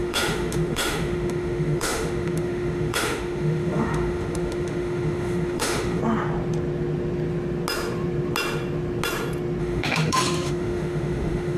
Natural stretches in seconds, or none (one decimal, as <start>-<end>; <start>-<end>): 6.0-9.6